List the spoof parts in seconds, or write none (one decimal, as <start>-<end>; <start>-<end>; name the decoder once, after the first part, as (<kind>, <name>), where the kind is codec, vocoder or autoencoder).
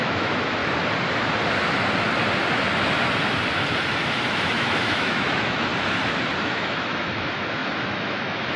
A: 0.0-0.6 (autoencoder, DAC-VAE); 4.1-5.7; 6.4-8.6